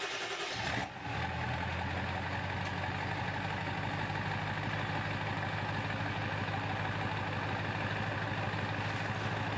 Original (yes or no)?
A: yes